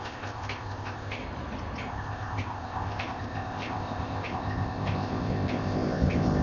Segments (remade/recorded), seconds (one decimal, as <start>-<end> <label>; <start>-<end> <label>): 0.0-1.2 remade; 1.2-1.9 recorded; 1.9-6.4 remade